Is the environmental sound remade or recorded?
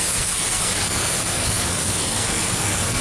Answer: remade